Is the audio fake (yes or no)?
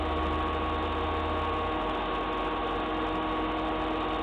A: no